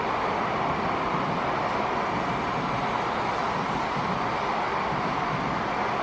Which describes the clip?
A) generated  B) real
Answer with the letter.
B